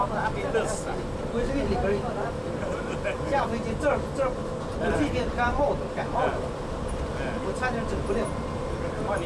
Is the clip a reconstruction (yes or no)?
no